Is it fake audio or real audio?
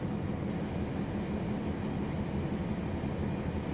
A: real